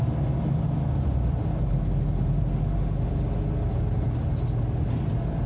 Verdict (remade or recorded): recorded